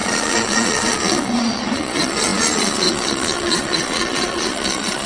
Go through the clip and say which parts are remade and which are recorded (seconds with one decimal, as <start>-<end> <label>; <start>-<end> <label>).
0.0-5.1 remade